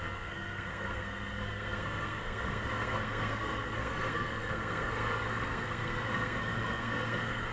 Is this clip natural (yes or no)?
no